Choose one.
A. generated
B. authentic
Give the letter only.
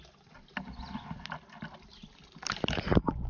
B